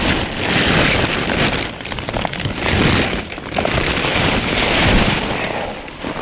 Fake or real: fake